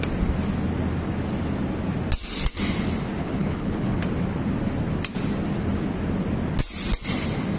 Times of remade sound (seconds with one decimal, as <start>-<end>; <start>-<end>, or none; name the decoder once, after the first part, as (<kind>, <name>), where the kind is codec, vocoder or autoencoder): 3.2-4.0 (codec, HILCodec)